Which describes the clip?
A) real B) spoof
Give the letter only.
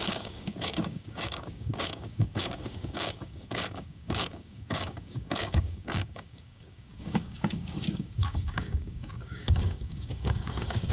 B